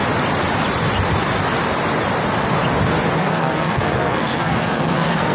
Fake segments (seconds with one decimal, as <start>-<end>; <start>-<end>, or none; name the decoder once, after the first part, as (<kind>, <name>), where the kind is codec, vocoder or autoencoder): 3.2-5.3 (codec, SNAC)